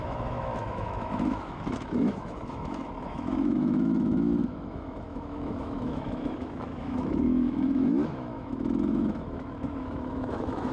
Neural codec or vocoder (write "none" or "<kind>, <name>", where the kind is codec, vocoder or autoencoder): autoencoder, DAC-VAE